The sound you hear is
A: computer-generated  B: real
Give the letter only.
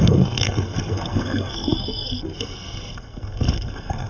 A